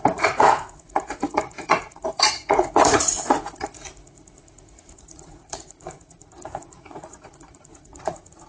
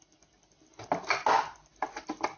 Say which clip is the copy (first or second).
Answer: first